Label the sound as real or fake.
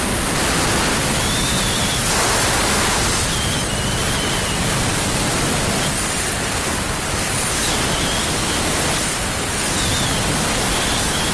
real